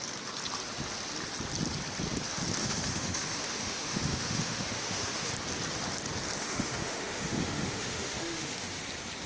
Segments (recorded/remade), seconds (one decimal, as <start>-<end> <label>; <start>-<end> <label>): 0.0-2.6 recorded; 2.6-5.3 remade; 5.3-6.4 recorded; 6.4-8.8 remade; 8.8-9.3 recorded